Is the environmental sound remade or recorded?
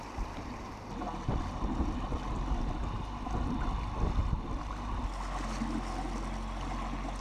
recorded